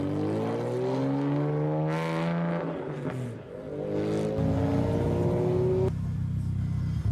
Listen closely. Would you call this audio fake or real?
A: real